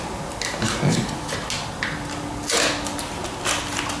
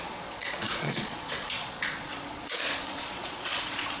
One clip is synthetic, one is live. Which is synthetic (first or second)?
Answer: second